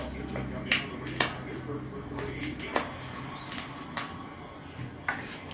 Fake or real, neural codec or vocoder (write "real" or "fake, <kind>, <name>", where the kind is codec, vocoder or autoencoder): real